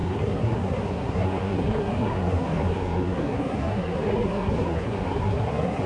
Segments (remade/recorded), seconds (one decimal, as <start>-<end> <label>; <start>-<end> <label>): 0.0-5.9 remade